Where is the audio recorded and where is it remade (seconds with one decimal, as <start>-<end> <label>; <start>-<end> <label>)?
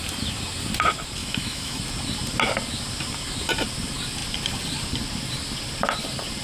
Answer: 0.0-1.2 recorded; 1.2-1.8 remade; 1.8-6.4 recorded